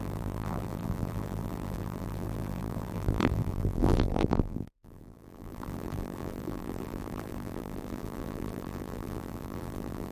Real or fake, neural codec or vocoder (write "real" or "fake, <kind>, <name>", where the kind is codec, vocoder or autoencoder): fake, vocoder, BigVGAN v2